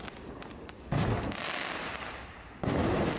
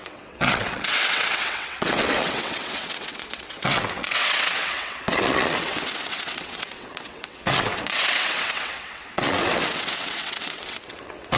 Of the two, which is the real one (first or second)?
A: first